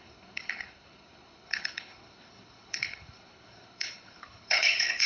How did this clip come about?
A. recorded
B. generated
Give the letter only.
B